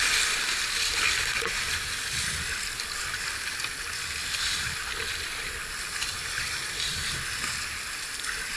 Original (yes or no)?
yes